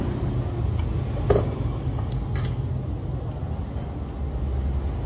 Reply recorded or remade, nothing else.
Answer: recorded